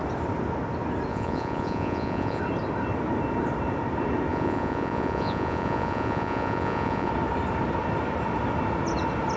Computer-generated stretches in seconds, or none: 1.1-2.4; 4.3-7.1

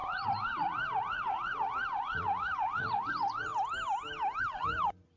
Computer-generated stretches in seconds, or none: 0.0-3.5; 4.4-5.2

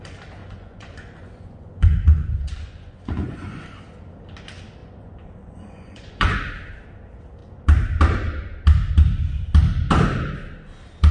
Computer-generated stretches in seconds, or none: 0.4-3.6; 4.8-6.5

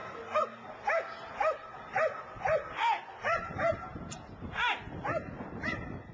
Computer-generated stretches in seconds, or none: none